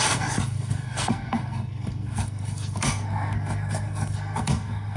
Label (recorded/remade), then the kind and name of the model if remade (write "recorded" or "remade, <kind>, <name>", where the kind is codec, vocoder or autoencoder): remade, codec, SNAC